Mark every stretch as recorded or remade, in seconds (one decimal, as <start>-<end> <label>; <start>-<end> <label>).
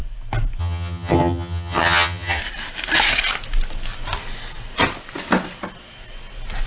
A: 0.0-0.6 recorded; 0.6-2.4 remade; 2.4-6.7 recorded